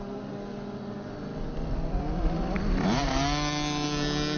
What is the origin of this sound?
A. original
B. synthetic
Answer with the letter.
A